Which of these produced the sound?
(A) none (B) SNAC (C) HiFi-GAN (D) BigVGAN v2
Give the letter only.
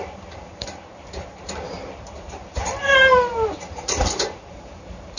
D